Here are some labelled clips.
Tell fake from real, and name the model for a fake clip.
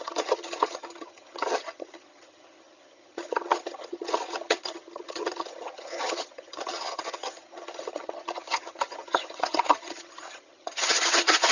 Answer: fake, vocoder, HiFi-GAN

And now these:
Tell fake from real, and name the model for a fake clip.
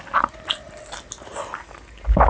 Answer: real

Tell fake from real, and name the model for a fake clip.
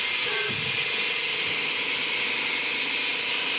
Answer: real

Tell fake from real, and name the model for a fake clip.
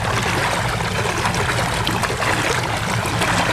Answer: real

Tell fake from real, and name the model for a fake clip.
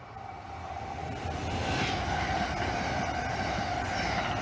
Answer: real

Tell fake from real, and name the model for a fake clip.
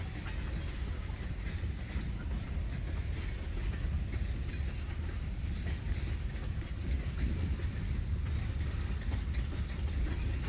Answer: real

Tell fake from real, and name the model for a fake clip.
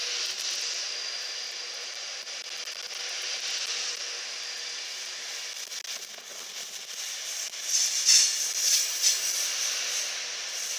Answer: real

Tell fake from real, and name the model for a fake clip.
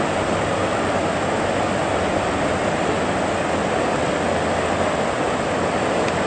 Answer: real